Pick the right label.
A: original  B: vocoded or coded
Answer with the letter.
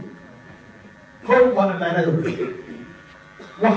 B